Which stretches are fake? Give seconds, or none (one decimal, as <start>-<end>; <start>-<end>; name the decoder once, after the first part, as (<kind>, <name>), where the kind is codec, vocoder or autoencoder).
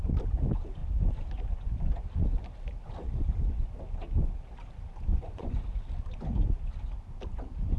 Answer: 5.1-5.6 (vocoder, Vocos)